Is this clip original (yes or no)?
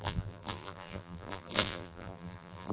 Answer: no